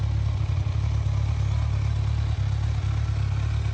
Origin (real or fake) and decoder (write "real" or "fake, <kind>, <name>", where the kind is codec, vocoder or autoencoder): real